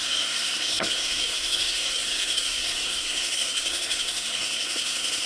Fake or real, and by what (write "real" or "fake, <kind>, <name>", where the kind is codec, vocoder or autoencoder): fake, codec, SNAC